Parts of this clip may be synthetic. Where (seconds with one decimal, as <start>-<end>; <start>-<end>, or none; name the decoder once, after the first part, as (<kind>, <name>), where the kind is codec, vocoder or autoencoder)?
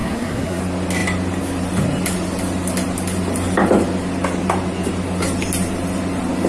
0.0-0.6 (codec, SNAC)